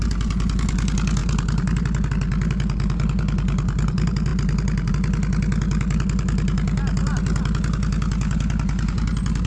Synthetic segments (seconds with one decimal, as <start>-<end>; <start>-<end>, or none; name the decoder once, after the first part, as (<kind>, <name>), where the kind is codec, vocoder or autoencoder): none